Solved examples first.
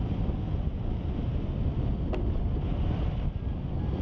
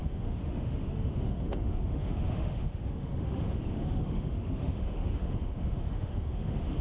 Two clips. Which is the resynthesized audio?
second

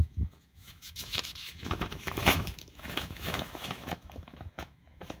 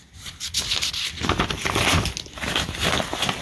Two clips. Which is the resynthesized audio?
first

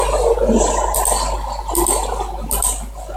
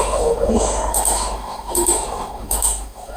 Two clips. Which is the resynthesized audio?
second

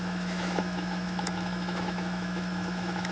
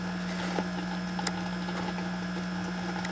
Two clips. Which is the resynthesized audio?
first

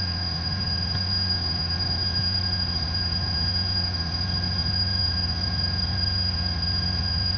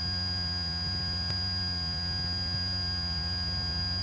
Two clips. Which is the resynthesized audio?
first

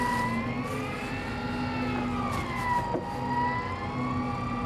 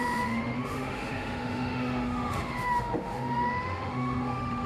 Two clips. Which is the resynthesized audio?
second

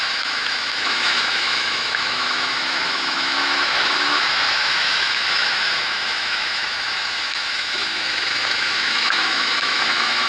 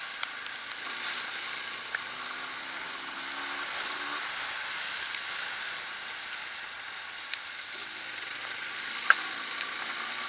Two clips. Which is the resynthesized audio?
first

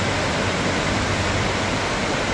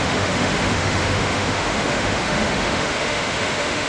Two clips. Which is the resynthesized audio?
second